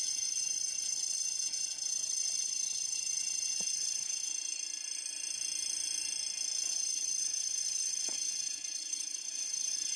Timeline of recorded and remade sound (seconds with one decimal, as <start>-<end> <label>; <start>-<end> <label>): 0.0-4.3 remade; 4.3-6.7 recorded; 6.7-10.0 remade